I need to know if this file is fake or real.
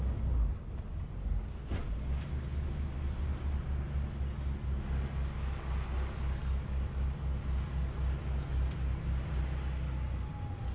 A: real